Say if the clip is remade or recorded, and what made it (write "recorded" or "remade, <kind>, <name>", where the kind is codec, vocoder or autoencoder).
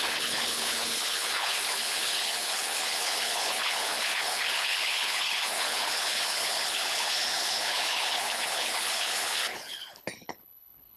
remade, codec, HILCodec